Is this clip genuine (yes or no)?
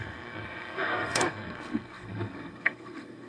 no